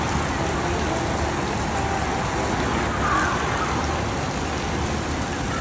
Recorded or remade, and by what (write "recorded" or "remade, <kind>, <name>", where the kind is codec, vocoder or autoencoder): recorded